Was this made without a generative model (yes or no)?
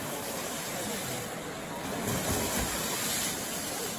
yes